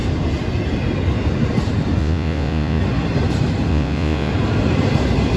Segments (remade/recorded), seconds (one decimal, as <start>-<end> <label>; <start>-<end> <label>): 0.0-2.0 recorded; 2.0-2.8 remade; 2.8-3.7 recorded; 3.7-4.3 remade; 4.3-5.4 recorded